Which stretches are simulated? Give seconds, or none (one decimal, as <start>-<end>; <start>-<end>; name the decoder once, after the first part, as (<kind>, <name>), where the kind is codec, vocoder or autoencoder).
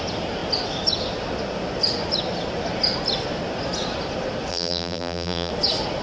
4.5-5.5 (vocoder, BigVGAN v2)